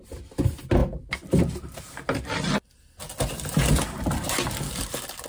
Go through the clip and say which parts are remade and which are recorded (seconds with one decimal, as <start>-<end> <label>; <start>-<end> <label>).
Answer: 0.0-5.3 recorded